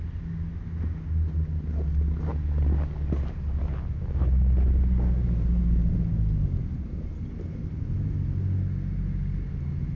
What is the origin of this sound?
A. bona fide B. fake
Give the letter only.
A